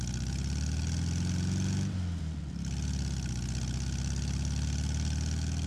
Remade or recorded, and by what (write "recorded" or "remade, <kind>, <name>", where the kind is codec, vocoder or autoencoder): recorded